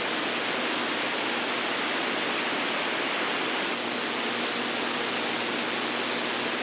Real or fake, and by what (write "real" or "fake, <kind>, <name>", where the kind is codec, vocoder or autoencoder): real